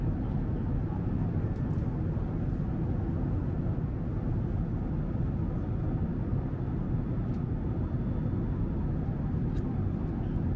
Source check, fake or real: real